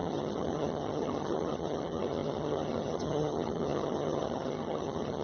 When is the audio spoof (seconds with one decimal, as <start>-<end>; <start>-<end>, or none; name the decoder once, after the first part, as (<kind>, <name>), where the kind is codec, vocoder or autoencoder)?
0.0-5.2 (vocoder, HiFi-GAN)